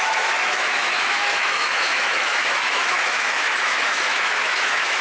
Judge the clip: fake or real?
fake